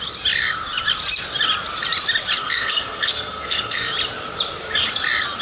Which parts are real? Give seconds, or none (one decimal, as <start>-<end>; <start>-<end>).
0.0-2.4; 3.9-5.4